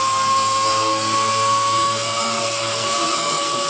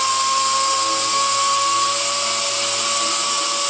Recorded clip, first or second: second